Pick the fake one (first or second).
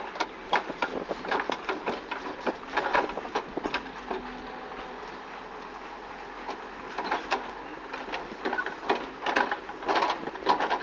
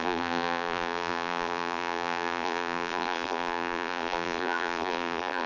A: second